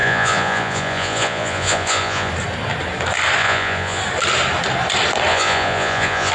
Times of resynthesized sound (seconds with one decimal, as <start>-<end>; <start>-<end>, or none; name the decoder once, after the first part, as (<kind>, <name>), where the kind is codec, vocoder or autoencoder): 0.0-2.3 (vocoder, Vocos); 3.4-4.0; 5.3-6.3